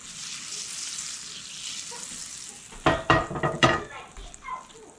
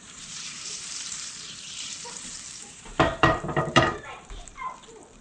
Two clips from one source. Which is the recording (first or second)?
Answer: first